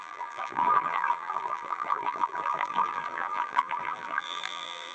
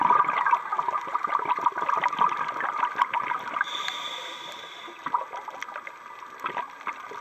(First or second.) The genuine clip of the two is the second